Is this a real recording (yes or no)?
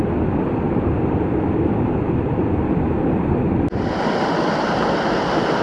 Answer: yes